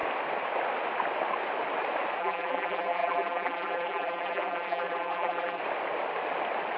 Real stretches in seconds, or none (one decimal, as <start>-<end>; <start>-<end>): 0.0-2.2; 5.6-6.8